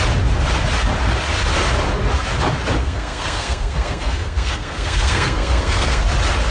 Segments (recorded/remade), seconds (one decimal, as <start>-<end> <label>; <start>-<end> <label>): 0.0-2.8 recorded; 2.8-6.0 remade; 6.0-6.5 recorded